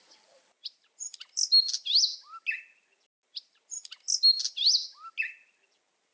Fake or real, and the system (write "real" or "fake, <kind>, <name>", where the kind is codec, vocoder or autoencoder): real